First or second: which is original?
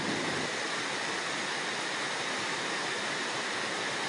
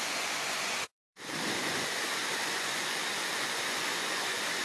first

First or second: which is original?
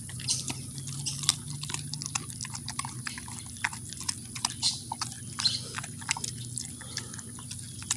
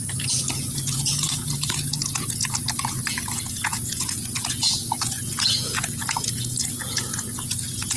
first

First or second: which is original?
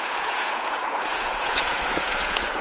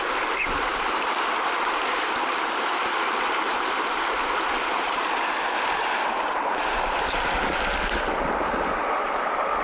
second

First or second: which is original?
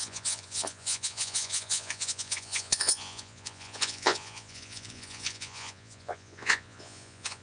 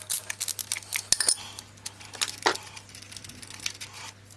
second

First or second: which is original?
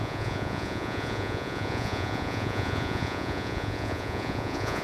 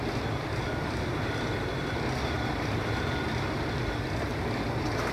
second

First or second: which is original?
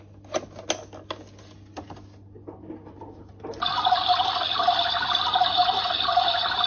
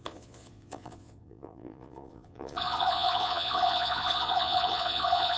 first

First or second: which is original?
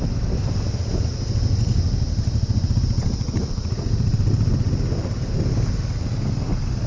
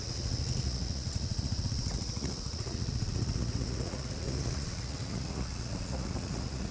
first